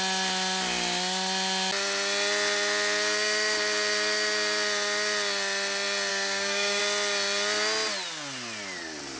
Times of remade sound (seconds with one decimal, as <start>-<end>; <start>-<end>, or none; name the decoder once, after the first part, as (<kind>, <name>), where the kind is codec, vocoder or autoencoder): 6.1-6.8 (codec, DAC)